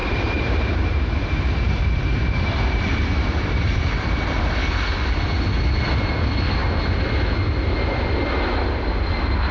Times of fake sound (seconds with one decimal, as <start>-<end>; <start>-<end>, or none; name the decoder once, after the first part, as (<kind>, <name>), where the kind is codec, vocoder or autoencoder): 0.0-4.2 (vocoder, BigVGAN v2)